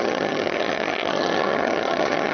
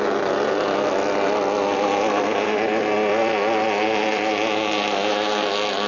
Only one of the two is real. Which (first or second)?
second